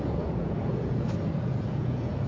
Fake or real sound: fake